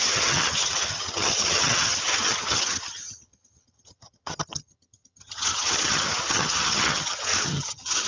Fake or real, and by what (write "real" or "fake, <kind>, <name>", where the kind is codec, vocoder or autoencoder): fake, vocoder, HiFi-GAN